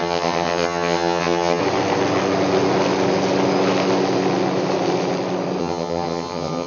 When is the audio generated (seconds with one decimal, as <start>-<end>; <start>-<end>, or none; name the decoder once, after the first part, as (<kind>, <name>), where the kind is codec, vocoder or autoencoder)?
0.0-1.6 (vocoder, HiFi-GAN); 5.6-6.7